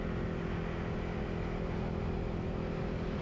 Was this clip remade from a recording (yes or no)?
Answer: no